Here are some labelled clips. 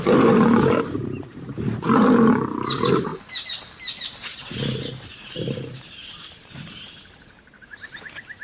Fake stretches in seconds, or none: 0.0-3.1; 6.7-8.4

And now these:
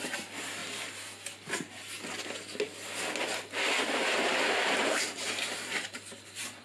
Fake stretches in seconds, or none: 0.0-0.6; 4.5-6.6

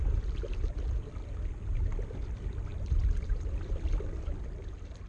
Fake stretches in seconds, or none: 2.7-3.7

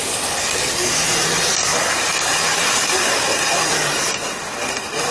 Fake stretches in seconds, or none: 1.7-3.0

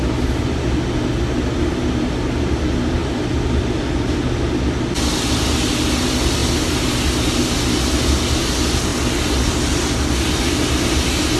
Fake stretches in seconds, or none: 3.0-3.9; 6.4-7.1

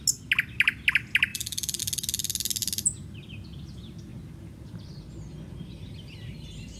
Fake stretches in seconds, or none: 1.3-1.8; 5.3-6.8

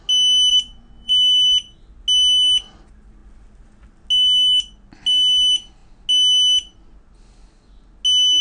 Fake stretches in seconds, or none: 0.5-1.1

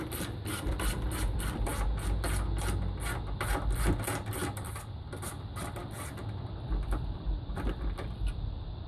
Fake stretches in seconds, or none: 0.0-1.7; 3.6-8.9